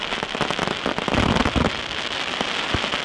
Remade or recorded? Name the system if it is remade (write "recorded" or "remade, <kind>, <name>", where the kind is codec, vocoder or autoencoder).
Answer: recorded